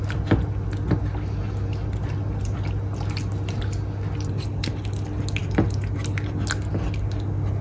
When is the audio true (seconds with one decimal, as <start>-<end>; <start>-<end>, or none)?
0.0-7.6